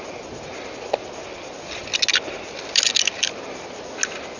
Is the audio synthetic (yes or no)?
no